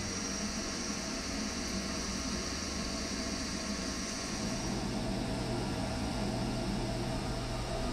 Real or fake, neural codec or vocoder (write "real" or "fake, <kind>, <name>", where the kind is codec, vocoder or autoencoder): fake, vocoder, Vocos